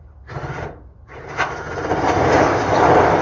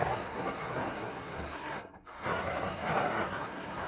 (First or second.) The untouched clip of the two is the first